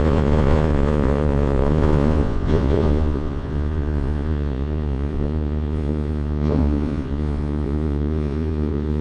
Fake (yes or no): yes